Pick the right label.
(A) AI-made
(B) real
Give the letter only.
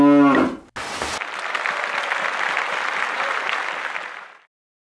B